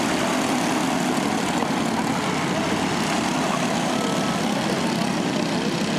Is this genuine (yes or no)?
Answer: yes